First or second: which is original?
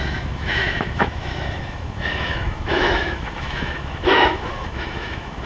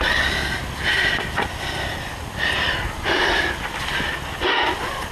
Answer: second